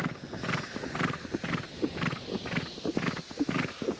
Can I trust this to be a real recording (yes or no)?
yes